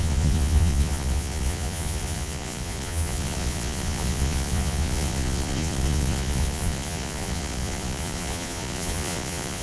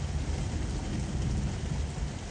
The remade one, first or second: first